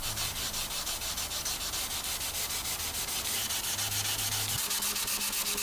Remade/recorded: recorded